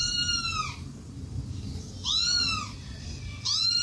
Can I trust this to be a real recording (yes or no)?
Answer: yes